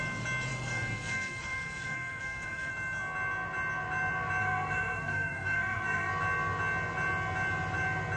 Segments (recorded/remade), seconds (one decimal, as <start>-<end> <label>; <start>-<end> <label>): 0.0-0.5 recorded; 0.5-2.7 remade; 2.7-4.4 recorded; 4.4-6.1 remade; 6.1-8.2 recorded